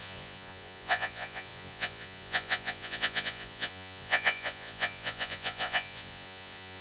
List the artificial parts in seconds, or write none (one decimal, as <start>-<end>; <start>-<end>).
0.0-6.8